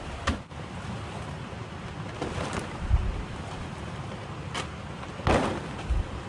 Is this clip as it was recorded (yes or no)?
yes